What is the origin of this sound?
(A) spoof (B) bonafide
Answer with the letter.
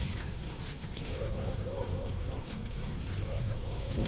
A